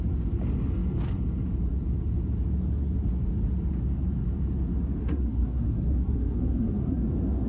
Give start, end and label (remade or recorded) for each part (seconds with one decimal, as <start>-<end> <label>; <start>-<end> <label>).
0.0-5.0 recorded; 5.0-7.0 remade; 7.0-7.5 recorded

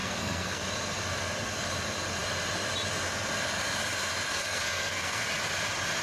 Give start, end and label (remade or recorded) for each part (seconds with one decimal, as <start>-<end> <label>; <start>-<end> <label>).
0.0-0.6 remade; 0.6-4.3 recorded; 4.3-5.2 remade; 5.2-6.0 recorded

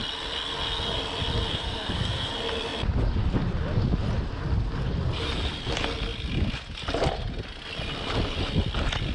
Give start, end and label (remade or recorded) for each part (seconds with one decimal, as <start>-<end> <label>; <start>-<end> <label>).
0.0-1.5 recorded; 1.5-2.3 remade; 2.3-9.1 recorded

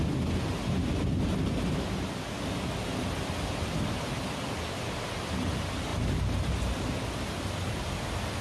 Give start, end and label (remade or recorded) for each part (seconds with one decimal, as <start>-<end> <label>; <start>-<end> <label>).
0.0-8.4 recorded

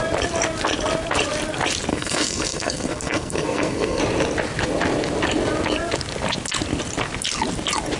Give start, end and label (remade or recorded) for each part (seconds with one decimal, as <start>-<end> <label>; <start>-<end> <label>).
0.0-1.9 recorded; 1.9-4.0 remade; 4.0-8.0 recorded

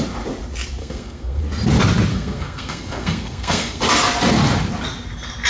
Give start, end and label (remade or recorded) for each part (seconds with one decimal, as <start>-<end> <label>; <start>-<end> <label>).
0.0-0.8 recorded; 0.8-1.4 remade; 1.4-2.1 recorded; 2.1-3.8 remade; 3.8-5.5 recorded

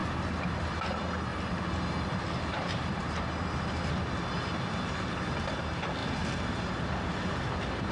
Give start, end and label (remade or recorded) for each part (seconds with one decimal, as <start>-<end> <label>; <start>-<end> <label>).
0.0-7.9 recorded